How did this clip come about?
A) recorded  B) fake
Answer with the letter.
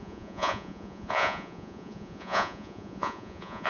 B